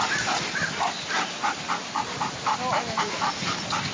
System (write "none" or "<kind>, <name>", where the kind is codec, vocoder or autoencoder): none